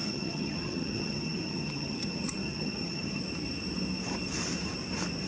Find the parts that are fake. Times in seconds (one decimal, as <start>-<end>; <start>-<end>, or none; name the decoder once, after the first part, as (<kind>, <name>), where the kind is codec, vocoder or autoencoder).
0.0-3.2 (vocoder, HiFi-GAN)